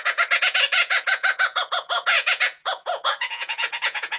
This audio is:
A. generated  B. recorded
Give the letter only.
A